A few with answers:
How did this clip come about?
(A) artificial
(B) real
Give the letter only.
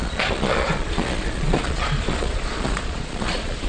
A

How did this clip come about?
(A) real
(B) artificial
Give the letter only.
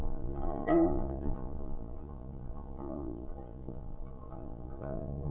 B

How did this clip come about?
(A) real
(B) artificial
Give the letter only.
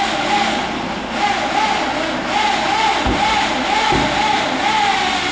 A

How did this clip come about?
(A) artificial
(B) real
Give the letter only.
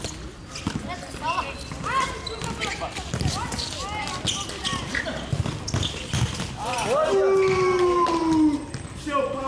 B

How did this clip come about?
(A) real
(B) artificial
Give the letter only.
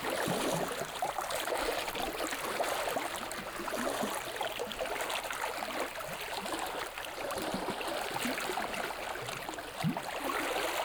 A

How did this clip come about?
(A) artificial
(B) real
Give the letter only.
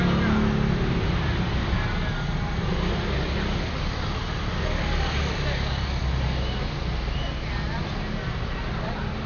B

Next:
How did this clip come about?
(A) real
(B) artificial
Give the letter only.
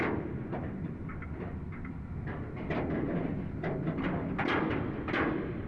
A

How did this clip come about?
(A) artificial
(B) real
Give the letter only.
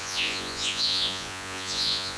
A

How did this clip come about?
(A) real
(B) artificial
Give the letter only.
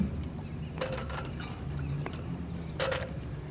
A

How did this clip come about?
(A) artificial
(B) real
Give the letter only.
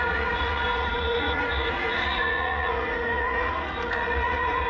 A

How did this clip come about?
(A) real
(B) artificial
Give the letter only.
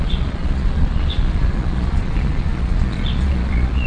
B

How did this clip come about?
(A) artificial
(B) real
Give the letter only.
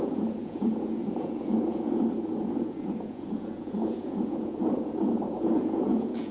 A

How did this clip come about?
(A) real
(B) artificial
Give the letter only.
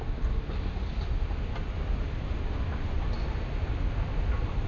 A